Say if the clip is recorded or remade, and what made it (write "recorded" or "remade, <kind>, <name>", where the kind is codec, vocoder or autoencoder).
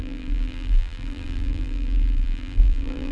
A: remade, vocoder, BigVGAN v2